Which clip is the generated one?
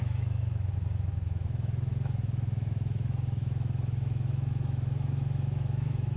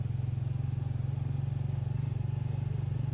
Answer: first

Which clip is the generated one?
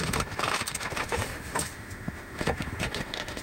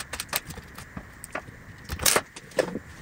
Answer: first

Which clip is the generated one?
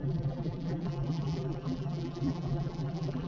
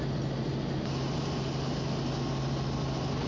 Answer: first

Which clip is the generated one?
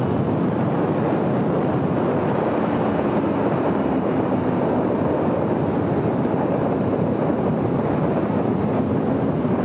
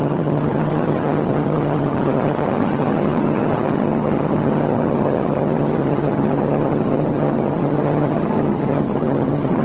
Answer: second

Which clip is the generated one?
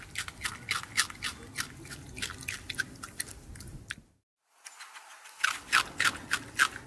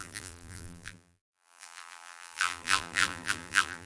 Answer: second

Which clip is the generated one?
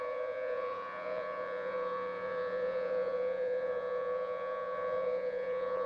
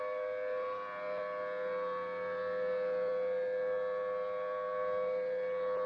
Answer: first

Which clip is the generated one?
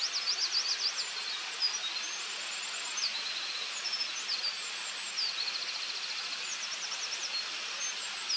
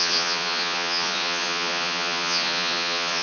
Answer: second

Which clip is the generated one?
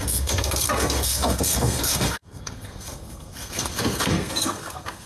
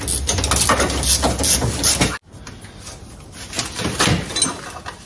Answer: first